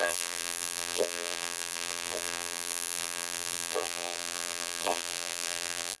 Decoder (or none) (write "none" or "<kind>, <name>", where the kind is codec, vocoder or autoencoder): vocoder, BigVGAN v2